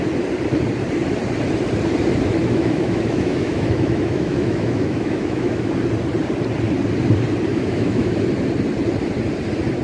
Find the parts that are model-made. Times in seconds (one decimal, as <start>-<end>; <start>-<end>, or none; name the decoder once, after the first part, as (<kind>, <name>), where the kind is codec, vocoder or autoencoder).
2.4-5.7 (autoencoder, DAC-VAE); 7.5-8.2